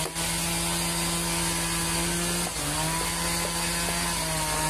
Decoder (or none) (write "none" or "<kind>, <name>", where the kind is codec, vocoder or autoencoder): none